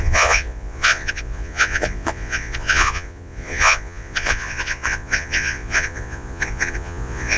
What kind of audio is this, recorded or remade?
remade